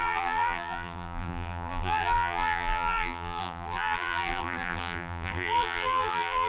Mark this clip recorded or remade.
remade